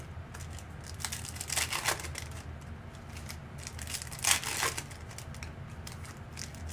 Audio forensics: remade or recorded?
recorded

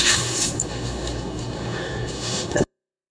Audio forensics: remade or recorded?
remade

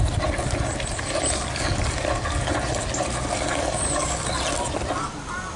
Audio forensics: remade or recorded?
recorded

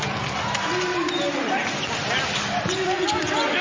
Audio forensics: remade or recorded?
recorded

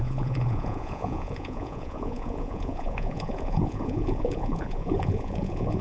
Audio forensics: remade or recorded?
remade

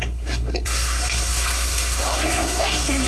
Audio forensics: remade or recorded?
remade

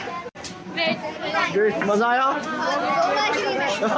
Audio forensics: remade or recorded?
recorded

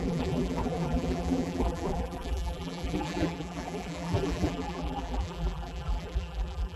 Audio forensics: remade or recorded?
remade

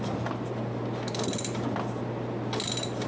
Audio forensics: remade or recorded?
recorded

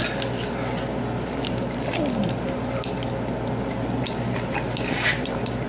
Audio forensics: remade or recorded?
recorded